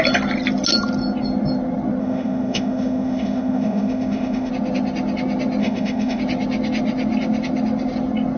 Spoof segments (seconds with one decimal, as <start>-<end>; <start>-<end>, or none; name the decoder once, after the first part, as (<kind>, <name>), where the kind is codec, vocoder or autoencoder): 2.0-4.5 (autoencoder, DAC-VAE); 5.6-6.2